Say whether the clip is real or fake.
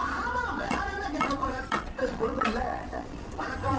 fake